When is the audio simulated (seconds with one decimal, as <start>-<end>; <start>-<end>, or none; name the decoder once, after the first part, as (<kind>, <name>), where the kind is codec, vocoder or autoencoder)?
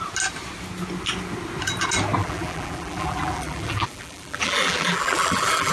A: 2.2-5.7 (vocoder, BigVGAN v2)